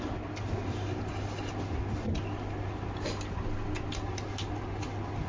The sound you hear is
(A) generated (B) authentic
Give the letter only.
B